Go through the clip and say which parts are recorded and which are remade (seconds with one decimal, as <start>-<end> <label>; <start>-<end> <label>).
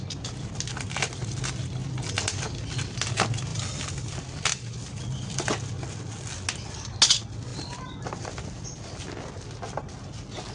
0.0-3.5 recorded; 3.5-5.5 remade; 5.5-7.5 recorded; 7.5-8.3 remade; 8.3-10.5 recorded